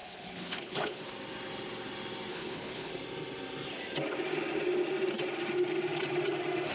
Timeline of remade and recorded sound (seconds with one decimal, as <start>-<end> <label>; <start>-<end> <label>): 0.0-1.0 remade; 1.0-2.3 recorded; 2.3-2.9 remade; 2.9-6.7 recorded